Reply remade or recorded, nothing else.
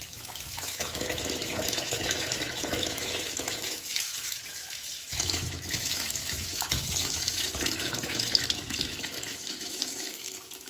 remade